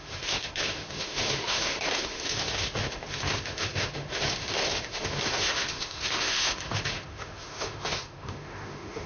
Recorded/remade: remade